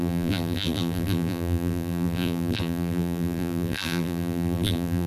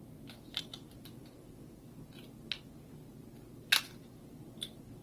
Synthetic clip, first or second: first